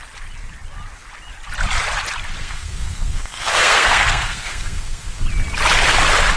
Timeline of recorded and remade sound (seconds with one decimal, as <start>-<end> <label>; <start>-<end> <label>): 0.0-2.4 recorded; 2.4-5.2 remade; 5.2-6.4 recorded